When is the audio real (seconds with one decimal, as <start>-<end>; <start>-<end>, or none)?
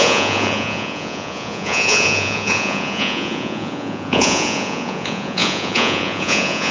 none